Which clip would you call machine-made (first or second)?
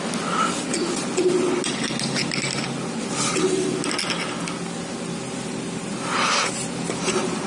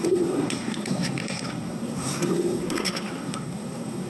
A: second